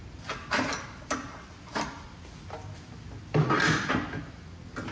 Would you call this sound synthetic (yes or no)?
no